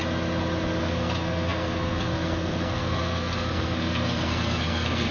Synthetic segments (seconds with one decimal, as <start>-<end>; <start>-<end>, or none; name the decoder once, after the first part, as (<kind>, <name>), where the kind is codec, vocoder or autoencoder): 0.8-5.1 (codec, SNAC)

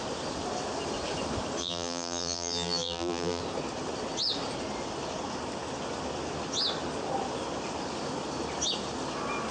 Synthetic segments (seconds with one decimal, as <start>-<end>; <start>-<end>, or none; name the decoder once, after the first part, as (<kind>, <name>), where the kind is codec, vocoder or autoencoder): 1.6-3.4 (vocoder, BigVGAN v2)

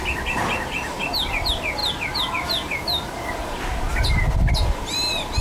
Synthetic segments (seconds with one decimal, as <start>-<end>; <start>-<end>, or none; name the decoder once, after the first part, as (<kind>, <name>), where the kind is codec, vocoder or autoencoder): none

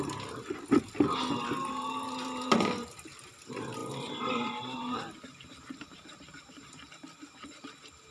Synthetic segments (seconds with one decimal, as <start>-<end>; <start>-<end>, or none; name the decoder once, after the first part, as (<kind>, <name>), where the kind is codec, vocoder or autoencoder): 3.8-6.7 (vocoder, BigVGAN v2)

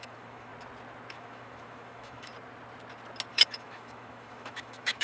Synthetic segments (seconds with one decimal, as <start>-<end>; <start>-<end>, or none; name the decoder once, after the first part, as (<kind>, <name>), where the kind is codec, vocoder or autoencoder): 0.0-0.5 (autoencoder, DAC-VAE); 1.1-2.3; 3.3-5.0